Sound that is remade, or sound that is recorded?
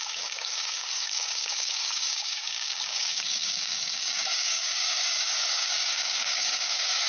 remade